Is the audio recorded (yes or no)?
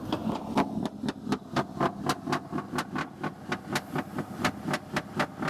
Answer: yes